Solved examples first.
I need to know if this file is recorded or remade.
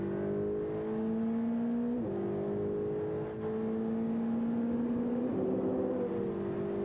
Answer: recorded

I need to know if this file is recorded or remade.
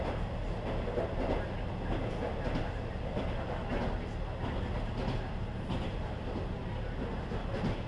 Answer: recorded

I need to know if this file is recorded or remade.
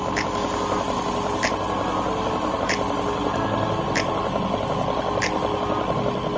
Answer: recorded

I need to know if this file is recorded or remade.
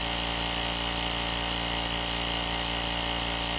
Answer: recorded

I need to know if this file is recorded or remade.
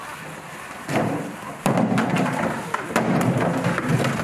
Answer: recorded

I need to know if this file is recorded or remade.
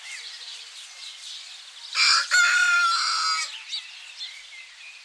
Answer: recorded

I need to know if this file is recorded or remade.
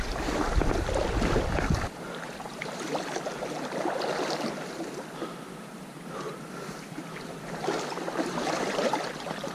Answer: remade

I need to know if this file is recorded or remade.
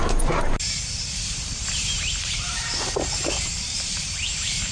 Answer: remade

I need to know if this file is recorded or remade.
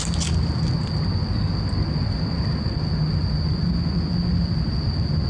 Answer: recorded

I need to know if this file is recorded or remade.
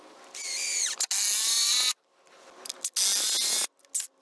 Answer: recorded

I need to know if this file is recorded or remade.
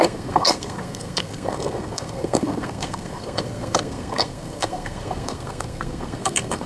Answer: remade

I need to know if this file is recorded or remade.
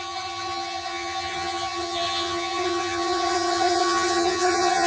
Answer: remade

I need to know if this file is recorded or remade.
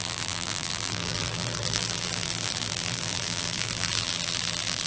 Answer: remade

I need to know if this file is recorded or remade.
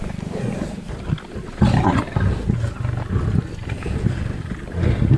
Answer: recorded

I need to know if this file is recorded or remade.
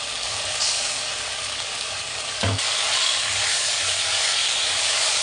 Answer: remade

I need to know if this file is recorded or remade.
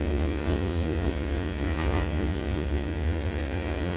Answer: remade